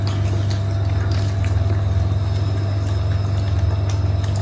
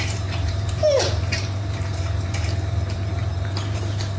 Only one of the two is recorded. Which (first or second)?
first